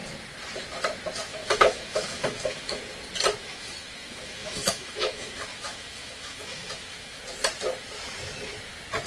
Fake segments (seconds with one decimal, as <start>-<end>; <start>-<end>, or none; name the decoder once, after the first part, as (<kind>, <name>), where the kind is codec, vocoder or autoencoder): 1.3-2.8 (autoencoder, DAC-VAE); 3.4-7.2